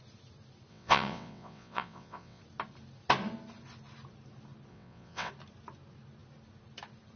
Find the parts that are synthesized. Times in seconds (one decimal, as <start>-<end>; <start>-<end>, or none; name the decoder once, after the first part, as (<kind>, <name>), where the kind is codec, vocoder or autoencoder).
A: 0.7-2.4 (vocoder, WaveNeXt); 4.7-5.3